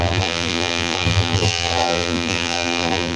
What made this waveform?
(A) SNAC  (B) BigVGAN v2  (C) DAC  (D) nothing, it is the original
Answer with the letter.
B